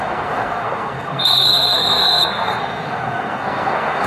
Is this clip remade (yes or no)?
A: yes